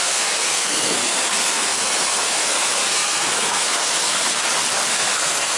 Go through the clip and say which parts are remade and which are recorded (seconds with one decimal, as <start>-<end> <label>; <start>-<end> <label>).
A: 0.0-4.4 remade; 4.4-4.9 recorded; 4.9-5.6 remade